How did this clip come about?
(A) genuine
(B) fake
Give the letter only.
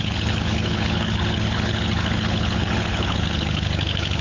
B